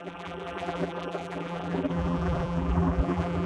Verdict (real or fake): fake